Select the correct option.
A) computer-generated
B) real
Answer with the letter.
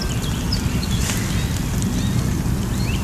B